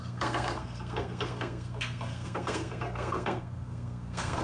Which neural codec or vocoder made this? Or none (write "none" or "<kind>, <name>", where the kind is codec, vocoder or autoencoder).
codec, SNAC